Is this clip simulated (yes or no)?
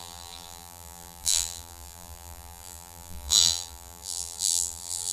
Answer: yes